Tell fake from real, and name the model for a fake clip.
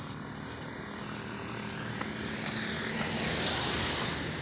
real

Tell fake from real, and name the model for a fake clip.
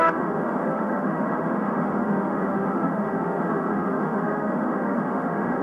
fake, autoencoder, DAC-VAE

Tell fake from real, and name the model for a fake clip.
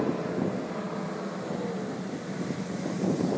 fake, vocoder, BigVGAN v2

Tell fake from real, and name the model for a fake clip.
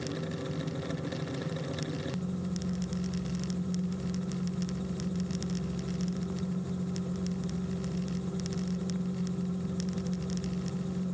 real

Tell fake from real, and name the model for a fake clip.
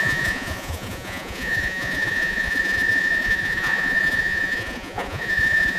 fake, vocoder, Vocos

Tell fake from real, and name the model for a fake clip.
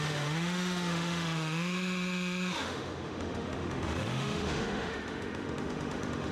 fake, autoencoder, DAC-VAE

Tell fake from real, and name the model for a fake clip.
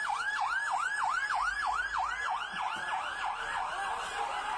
real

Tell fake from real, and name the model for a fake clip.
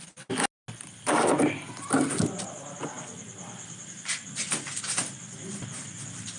real